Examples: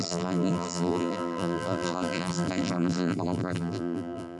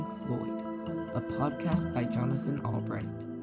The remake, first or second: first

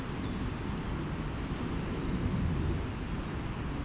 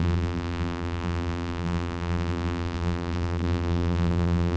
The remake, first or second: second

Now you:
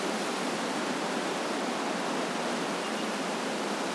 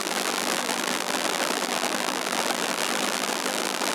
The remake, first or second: second